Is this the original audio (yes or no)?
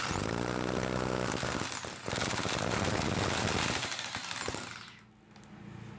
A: yes